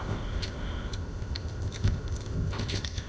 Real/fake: fake